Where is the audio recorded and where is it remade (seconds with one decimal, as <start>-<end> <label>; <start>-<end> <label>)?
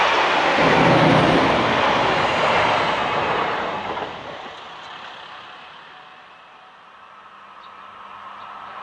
0.0-3.0 recorded; 3.0-4.5 remade; 4.5-8.8 recorded